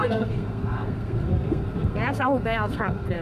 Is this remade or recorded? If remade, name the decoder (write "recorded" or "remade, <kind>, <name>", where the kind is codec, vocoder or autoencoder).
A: remade, codec, SNAC